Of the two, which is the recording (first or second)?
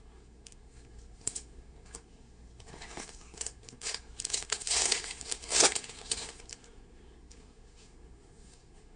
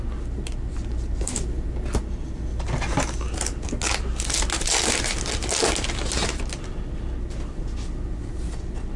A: second